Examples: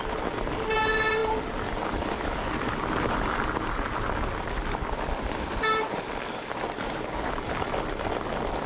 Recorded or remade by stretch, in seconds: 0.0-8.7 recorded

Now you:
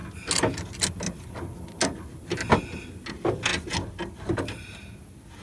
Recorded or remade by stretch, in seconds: 0.0-5.4 recorded

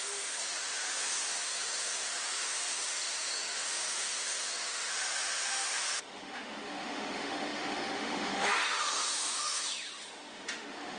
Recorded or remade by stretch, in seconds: 0.0-11.0 remade

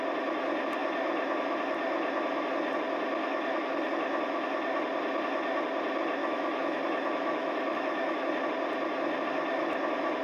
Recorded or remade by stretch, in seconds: 0.0-3.2 recorded; 3.2-3.9 remade; 3.9-6.2 recorded; 6.2-8.3 remade; 8.3-10.2 recorded

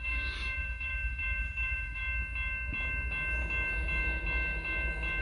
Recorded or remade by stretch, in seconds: 0.0-2.0 remade; 2.0-5.2 recorded

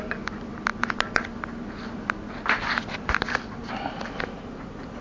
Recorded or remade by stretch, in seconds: 0.0-5.0 recorded